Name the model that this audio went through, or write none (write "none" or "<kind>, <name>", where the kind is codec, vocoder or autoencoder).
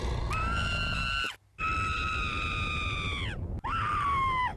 none